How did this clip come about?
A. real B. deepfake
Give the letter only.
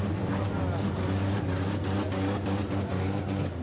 A